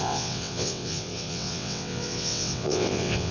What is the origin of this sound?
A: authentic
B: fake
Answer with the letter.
B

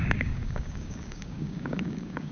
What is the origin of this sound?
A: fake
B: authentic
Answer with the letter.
A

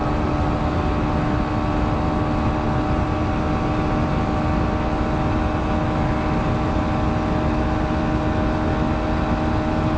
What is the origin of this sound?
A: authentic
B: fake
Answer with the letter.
A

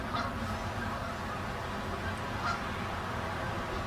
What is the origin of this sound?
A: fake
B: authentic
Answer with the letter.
B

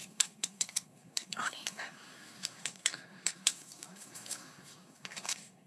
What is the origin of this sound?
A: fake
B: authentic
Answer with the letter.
A